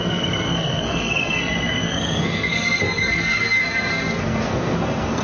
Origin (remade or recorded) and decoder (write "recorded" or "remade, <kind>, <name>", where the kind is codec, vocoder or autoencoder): remade, codec, SNAC